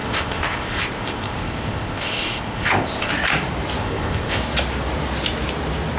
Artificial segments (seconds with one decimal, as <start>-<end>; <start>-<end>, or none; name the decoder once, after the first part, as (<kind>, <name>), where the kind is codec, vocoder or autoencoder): 0.0-3.1 (codec, ZipCodec); 3.8-4.4